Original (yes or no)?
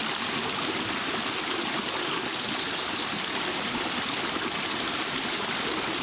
yes